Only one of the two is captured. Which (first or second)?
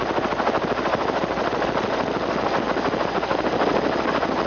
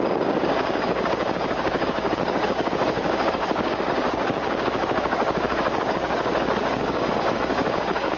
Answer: first